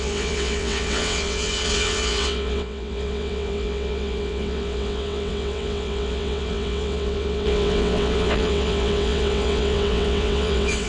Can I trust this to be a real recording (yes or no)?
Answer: no